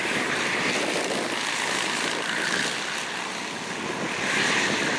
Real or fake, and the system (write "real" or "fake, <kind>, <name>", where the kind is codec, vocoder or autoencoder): real